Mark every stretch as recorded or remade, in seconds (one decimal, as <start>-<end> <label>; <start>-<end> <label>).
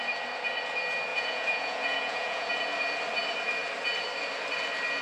0.0-1.1 recorded; 1.1-2.5 remade; 2.5-5.0 recorded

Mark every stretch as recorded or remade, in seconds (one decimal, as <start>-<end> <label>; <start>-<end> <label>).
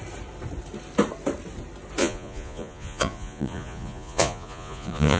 0.0-2.0 recorded; 2.0-5.2 remade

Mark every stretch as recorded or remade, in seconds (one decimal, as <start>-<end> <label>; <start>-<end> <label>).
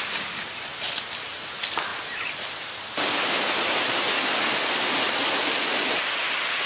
0.0-6.7 recorded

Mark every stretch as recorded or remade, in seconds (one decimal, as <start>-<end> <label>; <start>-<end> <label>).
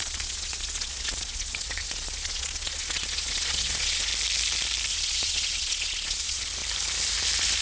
0.0-4.1 remade; 4.1-4.9 recorded; 4.9-6.6 remade; 6.6-7.6 recorded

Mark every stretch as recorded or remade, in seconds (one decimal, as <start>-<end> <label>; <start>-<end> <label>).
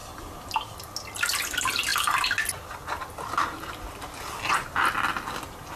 0.0-5.8 recorded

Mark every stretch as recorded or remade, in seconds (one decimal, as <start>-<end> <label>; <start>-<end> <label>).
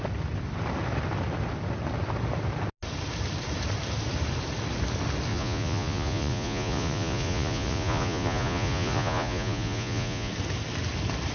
0.0-5.3 recorded; 5.3-10.3 remade; 10.3-11.3 recorded